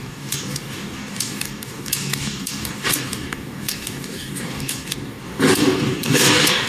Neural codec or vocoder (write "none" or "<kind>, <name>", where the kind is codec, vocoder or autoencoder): codec, DAC